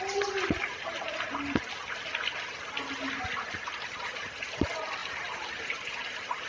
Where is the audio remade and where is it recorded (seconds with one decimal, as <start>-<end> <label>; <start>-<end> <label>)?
0.0-6.5 recorded